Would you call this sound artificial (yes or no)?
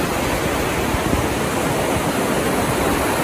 no